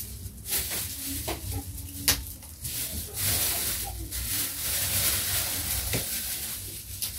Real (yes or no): yes